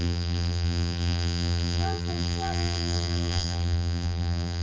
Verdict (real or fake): fake